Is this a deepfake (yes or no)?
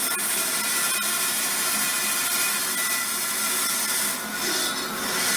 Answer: no